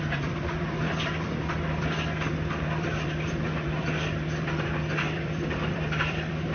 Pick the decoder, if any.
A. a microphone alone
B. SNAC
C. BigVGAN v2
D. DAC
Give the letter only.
C